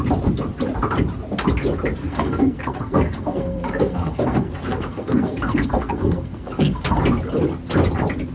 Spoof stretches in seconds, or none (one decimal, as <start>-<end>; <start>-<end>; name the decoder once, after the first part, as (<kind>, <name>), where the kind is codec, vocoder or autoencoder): 2.0-7.0 (codec, SNAC)